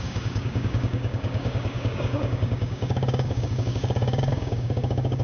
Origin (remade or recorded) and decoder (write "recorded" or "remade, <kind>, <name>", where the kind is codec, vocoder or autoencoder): remade, codec, DAC